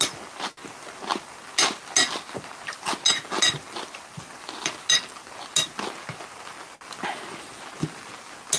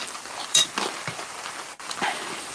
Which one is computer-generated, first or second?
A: second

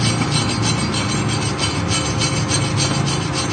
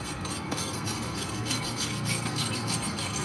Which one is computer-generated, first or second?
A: second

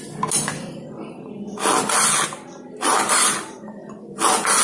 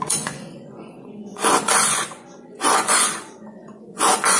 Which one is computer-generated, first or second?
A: second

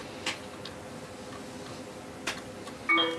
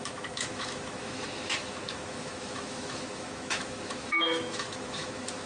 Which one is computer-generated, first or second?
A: second